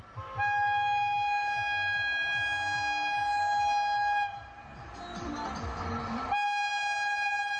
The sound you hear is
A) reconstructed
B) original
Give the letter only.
B